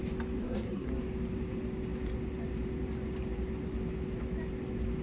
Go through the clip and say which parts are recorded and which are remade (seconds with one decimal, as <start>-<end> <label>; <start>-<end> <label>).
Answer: 0.0-0.4 recorded; 0.4-0.9 remade; 0.9-5.0 recorded